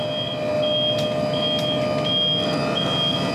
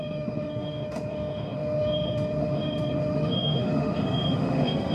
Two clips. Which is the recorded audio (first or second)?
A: first